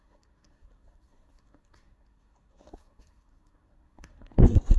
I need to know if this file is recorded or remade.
remade